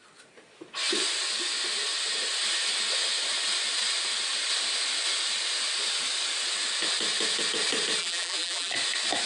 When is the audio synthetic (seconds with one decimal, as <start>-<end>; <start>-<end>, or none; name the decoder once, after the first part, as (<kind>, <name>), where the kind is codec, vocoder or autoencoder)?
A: 8.0-8.7 (vocoder, BigVGAN v2)